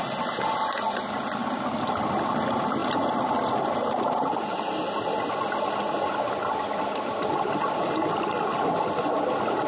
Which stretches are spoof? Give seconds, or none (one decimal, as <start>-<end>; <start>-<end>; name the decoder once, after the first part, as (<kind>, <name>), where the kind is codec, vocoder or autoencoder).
none